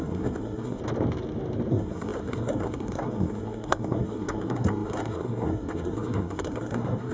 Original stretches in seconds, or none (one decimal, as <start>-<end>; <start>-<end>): 0.8-1.7